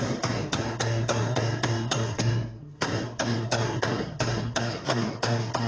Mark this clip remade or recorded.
remade